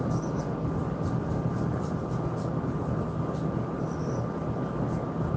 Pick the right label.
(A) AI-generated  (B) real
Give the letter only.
B